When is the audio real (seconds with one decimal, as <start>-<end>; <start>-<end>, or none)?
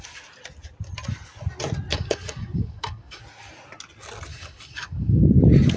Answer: 0.0-1.9; 3.2-4.3; 5.2-5.8